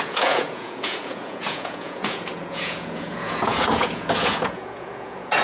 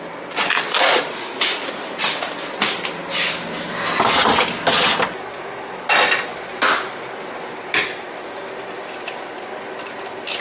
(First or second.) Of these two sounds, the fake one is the first